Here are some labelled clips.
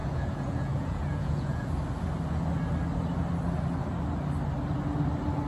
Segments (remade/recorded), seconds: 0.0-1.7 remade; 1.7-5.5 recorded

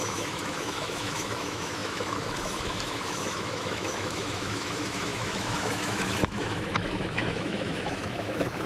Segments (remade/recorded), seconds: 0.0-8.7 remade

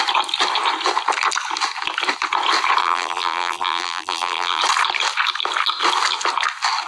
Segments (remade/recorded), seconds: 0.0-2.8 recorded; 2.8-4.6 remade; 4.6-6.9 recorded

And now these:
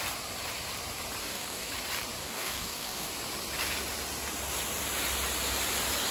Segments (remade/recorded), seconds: 0.0-1.2 recorded; 1.2-1.7 remade; 1.7-2.2 recorded; 2.2-3.1 remade; 3.1-6.1 recorded